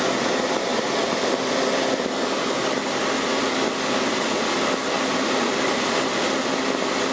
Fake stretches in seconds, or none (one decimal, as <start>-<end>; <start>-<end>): none